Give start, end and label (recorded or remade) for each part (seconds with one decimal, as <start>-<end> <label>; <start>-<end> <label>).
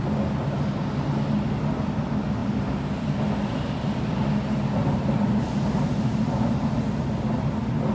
0.0-4.8 recorded; 4.8-6.8 remade; 6.8-7.9 recorded